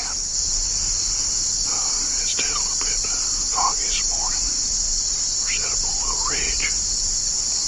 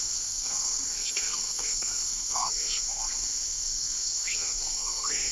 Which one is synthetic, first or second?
second